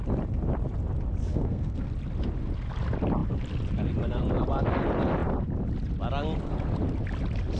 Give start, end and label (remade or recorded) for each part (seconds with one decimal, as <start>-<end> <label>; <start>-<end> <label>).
0.0-1.3 recorded; 1.3-1.9 remade; 1.9-7.6 recorded